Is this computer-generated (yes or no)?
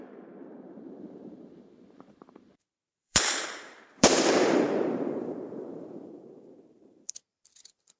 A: yes